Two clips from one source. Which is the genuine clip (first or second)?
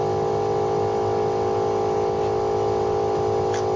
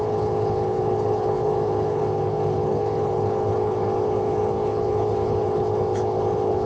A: first